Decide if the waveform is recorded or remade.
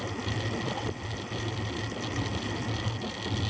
recorded